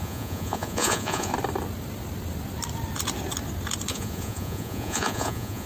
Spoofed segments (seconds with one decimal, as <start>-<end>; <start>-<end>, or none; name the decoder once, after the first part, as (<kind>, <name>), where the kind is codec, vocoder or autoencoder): 0.0-1.3 (vocoder, Vocos); 3.9-5.7